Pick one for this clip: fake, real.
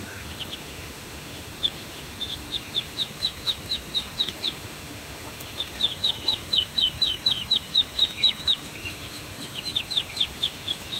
fake